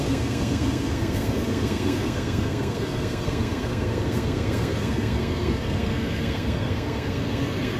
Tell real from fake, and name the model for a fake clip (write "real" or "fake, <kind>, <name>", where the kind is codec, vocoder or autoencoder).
fake, codec, SNAC